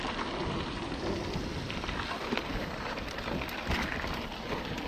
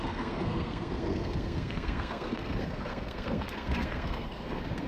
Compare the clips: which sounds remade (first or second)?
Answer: second